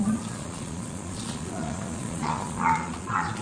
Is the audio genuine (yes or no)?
no